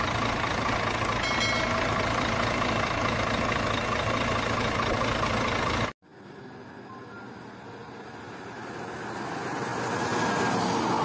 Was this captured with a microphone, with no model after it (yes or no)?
yes